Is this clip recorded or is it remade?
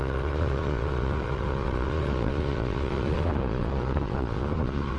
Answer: remade